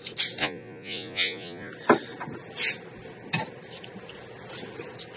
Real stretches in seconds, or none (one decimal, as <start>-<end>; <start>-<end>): 0.0-0.4; 1.7-5.2